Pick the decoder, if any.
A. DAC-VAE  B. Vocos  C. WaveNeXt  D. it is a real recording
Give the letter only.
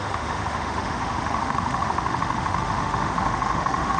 A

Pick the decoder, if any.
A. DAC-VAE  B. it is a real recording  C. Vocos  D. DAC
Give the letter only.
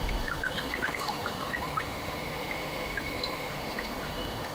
A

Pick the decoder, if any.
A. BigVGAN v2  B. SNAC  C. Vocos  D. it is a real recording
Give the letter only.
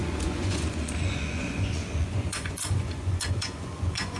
C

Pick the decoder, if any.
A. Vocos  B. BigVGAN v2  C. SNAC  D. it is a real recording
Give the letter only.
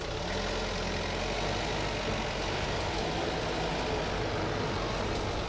D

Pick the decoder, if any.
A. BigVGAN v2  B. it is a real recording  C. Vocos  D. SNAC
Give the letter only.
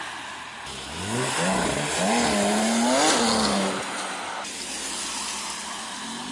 B